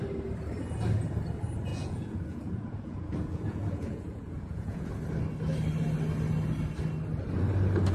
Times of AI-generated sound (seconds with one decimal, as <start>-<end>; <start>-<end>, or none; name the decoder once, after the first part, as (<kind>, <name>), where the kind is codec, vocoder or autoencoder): 1.7-4.9 (vocoder, Vocos)